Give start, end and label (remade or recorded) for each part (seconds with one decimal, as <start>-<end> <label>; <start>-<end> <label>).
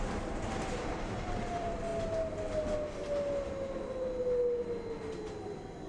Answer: 0.0-1.9 remade; 1.9-5.4 recorded; 5.4-5.9 remade